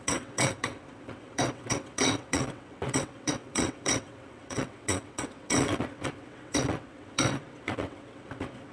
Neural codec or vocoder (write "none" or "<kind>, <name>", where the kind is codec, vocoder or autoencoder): vocoder, WaveNeXt